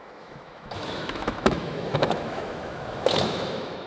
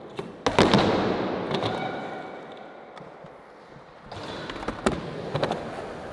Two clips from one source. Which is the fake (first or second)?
first